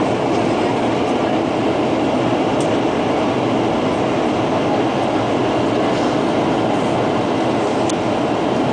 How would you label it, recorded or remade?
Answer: recorded